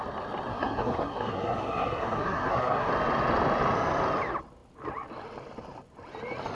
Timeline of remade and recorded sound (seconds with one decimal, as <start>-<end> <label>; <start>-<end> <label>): 0.0-0.5 recorded; 0.5-2.9 remade; 2.9-6.5 recorded